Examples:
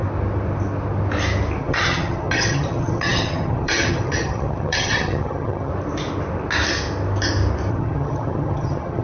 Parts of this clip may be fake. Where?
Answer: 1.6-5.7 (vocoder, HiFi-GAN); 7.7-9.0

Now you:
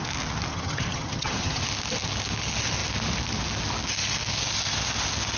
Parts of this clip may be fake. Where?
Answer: 0.5-1.6 (vocoder, HiFi-GAN)

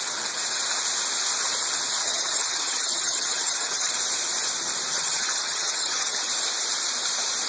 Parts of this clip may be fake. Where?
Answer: 2.0-3.9 (vocoder, HiFi-GAN); 4.9-6.3